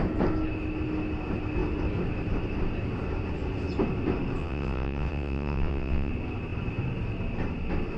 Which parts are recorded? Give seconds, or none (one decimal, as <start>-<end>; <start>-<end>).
0.0-4.4; 6.1-8.0